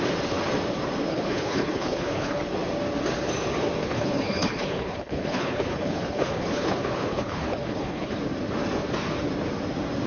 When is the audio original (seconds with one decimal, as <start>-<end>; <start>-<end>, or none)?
0.0-1.1; 2.4-3.8; 8.2-10.1